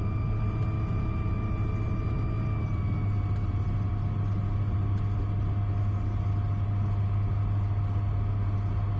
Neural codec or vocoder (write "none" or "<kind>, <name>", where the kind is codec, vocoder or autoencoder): none